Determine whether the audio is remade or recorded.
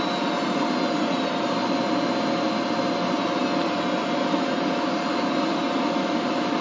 recorded